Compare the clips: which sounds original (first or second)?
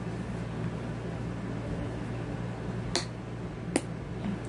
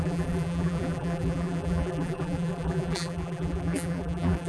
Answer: first